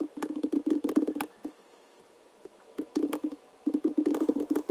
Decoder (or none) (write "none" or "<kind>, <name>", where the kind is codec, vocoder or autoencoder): autoencoder, DAC-VAE